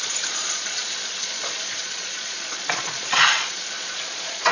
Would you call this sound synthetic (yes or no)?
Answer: yes